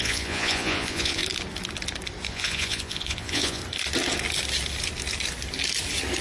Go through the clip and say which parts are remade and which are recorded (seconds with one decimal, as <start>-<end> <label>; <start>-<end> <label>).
0.0-1.2 remade; 1.2-2.3 recorded; 2.3-3.6 remade; 3.6-6.2 recorded